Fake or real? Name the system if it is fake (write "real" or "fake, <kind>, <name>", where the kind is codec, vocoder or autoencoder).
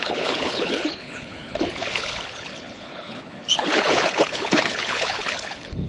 fake, codec, HILCodec